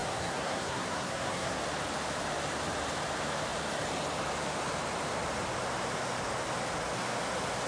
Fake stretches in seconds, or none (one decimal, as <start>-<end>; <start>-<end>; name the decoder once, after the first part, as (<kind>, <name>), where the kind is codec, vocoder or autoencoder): 0.0-1.6 (codec, SNAC)